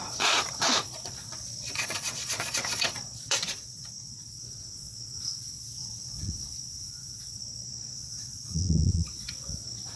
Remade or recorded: remade